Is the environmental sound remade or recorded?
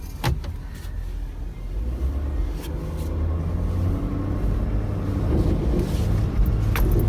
recorded